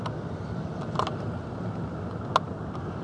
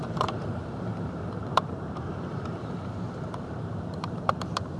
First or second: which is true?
first